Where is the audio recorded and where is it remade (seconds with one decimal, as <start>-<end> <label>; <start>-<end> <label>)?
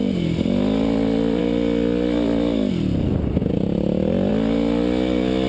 0.0-5.5 recorded